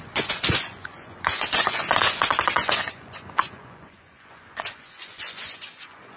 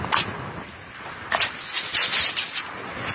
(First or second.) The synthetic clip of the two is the first